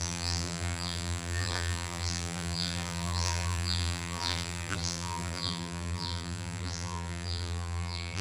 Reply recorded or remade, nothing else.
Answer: remade